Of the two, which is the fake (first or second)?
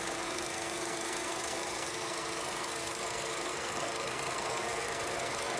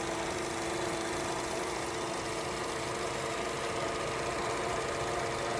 first